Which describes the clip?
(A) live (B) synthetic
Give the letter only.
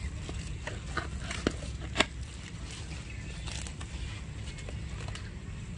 A